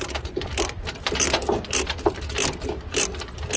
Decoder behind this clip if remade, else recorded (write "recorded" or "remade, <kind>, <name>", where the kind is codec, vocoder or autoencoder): recorded